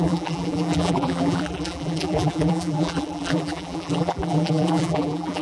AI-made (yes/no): yes